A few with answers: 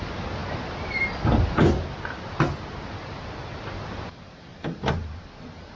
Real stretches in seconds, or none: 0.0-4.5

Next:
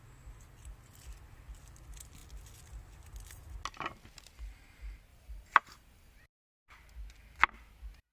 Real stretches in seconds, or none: 0.0-5.1; 6.2-8.1

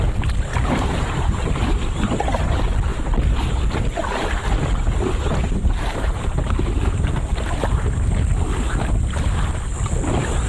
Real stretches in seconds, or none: 0.0-0.5; 2.1-5.4; 8.3-10.5

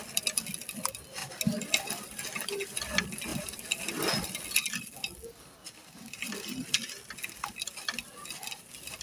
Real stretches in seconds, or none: 0.0-9.0

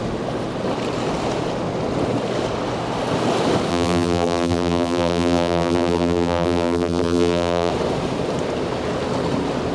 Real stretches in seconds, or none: 0.0-3.7; 7.7-9.7

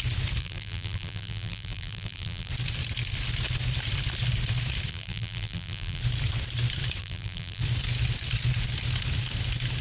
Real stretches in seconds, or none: 0.0-0.4; 2.5-4.9; 6.0-7.0; 7.6-9.8